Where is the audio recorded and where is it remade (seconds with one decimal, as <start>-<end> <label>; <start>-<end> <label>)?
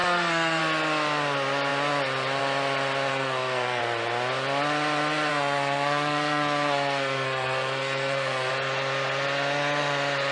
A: 0.0-0.6 remade; 0.6-3.1 recorded; 3.1-3.8 remade; 3.8-5.3 recorded; 5.3-8.5 remade; 8.5-10.3 recorded